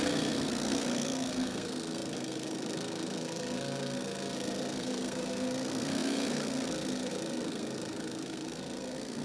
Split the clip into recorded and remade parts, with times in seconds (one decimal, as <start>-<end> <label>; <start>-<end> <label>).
0.0-9.2 remade